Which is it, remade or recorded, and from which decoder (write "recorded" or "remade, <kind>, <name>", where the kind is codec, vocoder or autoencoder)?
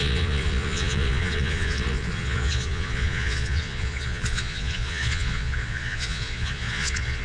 remade, vocoder, Vocos